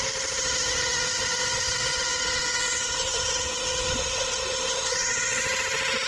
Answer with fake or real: real